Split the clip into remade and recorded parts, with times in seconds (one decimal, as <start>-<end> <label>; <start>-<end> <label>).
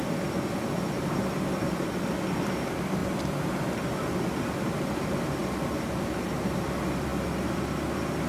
0.0-8.3 recorded